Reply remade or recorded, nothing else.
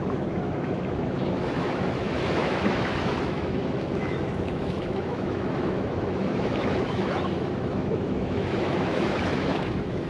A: remade